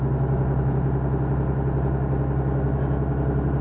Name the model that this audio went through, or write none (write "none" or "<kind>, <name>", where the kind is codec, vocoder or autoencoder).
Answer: none